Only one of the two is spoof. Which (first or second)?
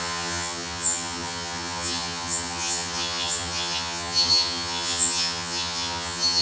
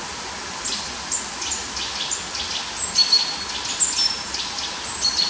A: first